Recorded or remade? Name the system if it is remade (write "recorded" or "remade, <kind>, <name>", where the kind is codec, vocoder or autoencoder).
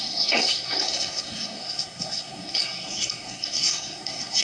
remade, codec, SNAC